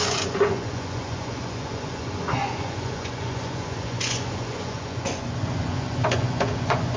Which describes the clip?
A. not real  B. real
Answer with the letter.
A